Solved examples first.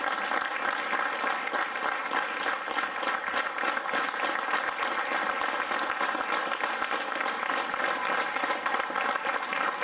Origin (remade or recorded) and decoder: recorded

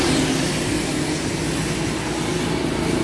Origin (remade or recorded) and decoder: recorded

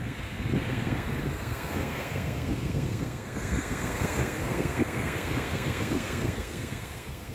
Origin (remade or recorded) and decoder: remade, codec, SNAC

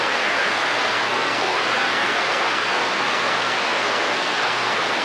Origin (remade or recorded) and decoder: remade, codec, SNAC